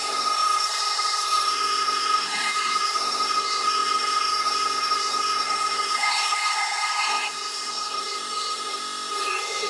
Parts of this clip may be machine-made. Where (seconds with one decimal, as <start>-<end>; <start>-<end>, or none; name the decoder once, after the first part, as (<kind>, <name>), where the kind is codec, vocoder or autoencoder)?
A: 0.0-9.7 (codec, SNAC)